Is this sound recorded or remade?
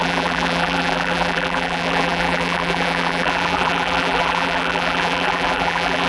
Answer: remade